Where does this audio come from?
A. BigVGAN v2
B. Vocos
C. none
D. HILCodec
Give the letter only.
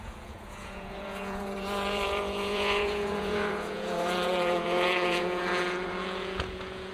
B